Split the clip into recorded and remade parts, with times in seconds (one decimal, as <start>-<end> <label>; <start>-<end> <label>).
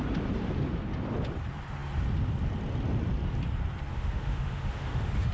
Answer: 0.0-3.9 recorded; 3.9-5.3 remade